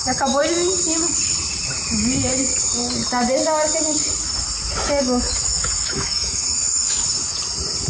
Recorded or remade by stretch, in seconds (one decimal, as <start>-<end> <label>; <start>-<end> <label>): 0.0-0.4 remade; 0.4-5.0 recorded; 5.0-7.0 remade; 7.0-7.9 recorded